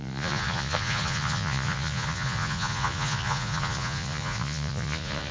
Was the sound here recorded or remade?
remade